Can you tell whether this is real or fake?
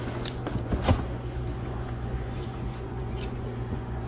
fake